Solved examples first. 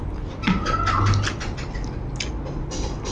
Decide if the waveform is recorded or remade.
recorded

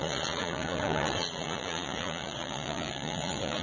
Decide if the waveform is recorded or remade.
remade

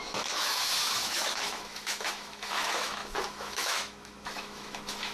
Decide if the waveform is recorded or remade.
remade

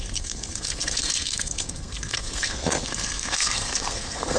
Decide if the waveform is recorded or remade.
remade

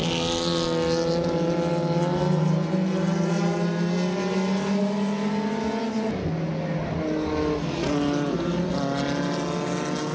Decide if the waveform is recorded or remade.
recorded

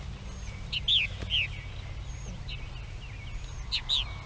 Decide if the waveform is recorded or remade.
recorded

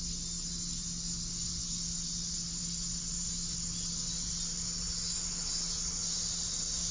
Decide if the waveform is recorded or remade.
recorded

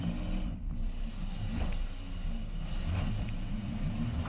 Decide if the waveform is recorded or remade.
recorded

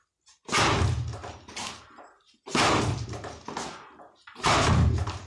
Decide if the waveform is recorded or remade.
recorded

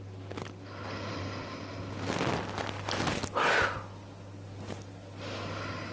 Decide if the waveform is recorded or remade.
recorded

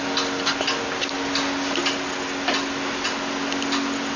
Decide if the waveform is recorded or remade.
recorded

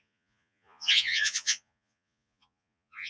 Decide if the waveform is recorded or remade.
remade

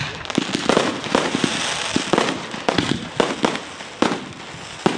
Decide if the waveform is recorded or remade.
recorded